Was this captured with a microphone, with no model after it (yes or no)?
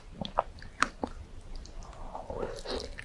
yes